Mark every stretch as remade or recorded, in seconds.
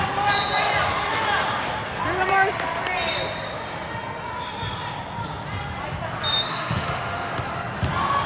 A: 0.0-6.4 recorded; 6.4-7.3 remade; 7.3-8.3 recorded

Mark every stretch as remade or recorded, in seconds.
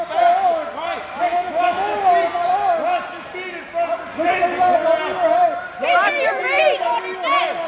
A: 0.0-1.2 recorded; 1.2-2.1 remade; 2.1-7.7 recorded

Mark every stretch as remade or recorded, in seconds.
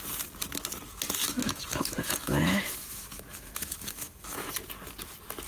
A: 0.0-1.2 recorded; 1.2-4.5 remade; 4.5-5.5 recorded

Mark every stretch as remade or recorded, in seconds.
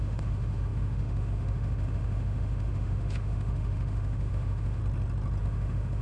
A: 0.0-4.8 remade; 4.8-5.4 recorded; 5.4-6.0 remade